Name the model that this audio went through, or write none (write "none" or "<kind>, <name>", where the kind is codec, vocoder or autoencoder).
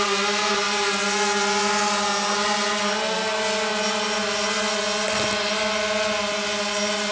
none